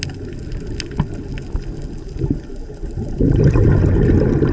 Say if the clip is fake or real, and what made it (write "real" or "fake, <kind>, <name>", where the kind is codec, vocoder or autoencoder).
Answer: real